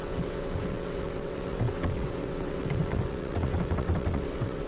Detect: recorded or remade remade